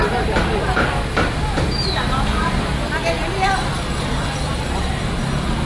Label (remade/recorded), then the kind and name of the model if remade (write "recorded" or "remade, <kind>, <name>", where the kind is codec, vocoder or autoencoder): recorded